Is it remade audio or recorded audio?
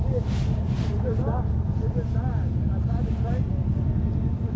remade